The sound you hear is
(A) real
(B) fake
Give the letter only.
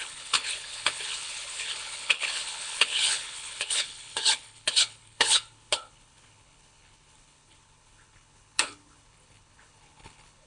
B